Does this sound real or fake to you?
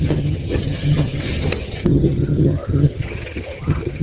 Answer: fake